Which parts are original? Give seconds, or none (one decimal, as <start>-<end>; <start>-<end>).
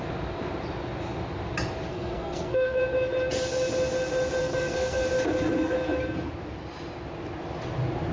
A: 0.0-1.9; 2.8-4.4; 5.0-8.1